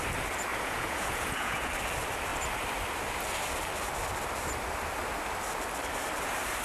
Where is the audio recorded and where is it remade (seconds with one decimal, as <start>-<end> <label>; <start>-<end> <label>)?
0.0-0.5 recorded; 0.5-1.7 remade; 1.7-6.6 recorded